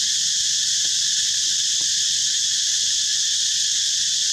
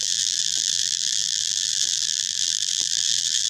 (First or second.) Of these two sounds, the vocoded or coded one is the second